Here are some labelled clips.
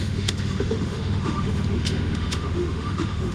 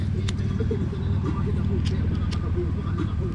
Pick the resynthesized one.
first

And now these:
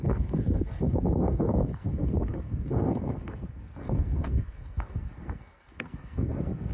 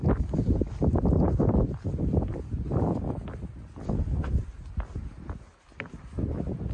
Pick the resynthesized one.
first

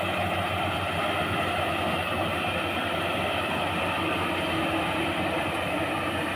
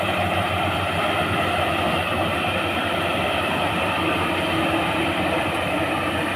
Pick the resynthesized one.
second